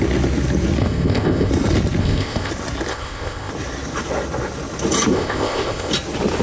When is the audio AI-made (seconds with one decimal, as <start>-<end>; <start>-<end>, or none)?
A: 0.8-1.5; 2.0-2.5; 2.9-3.5; 5.1-5.9